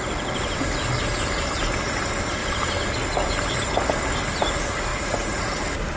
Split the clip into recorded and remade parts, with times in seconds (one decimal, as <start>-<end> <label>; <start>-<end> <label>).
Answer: 0.0-4.9 recorded; 4.9-5.6 remade; 5.6-6.0 recorded